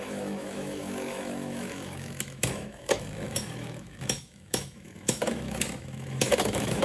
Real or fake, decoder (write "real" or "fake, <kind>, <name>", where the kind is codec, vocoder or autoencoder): fake, autoencoder, DAC-VAE